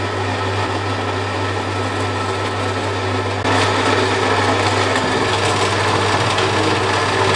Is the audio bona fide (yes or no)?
yes